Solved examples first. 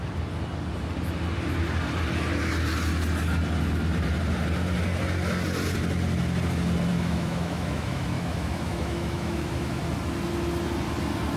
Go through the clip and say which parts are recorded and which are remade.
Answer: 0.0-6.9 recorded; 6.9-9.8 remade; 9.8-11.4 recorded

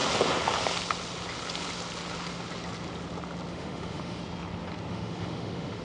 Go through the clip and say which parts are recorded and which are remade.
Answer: 0.0-3.5 recorded; 3.5-4.2 remade; 4.2-4.9 recorded; 4.9-5.8 remade